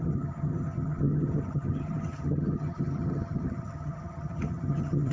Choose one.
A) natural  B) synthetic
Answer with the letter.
B